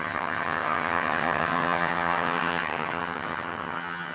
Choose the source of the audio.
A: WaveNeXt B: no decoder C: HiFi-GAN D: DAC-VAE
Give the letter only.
C